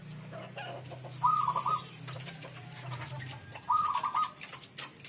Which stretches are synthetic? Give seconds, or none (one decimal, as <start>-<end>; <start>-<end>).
1.7-3.1